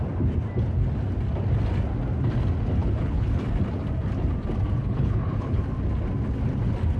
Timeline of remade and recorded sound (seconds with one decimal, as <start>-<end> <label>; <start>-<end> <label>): 0.0-2.8 recorded; 2.8-3.4 remade; 3.4-4.8 recorded; 4.8-5.6 remade; 5.6-7.0 recorded